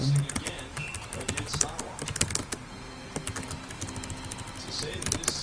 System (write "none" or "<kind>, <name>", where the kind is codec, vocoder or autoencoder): none